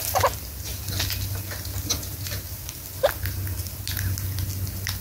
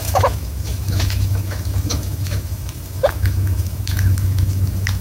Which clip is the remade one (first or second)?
second